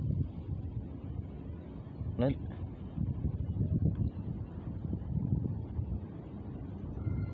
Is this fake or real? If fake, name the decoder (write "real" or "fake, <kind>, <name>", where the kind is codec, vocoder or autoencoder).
real